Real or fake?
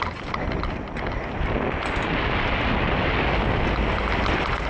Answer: real